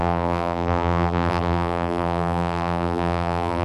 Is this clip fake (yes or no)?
yes